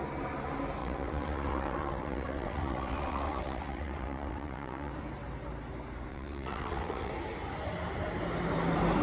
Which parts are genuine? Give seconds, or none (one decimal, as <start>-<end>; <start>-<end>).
0.0-0.8; 4.9-6.1; 7.1-9.0